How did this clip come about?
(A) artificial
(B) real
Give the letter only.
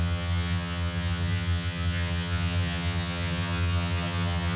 A